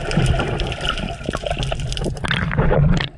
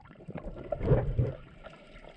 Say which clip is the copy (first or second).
second